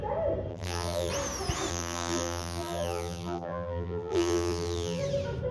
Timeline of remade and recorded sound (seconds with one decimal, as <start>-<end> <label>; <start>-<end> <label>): 0.0-0.5 recorded; 0.5-1.1 remade; 1.1-1.7 recorded; 1.7-5.0 remade; 5.0-5.5 recorded